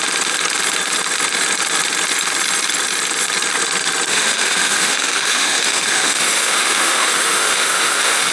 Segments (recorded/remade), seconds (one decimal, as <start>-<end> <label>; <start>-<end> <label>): 0.0-4.1 recorded; 4.1-8.3 remade